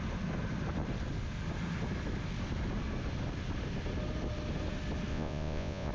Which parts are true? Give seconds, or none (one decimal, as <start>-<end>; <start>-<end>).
0.0-5.1